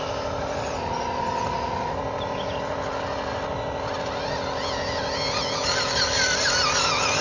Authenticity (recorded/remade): recorded